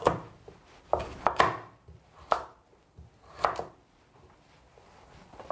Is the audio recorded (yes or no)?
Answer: yes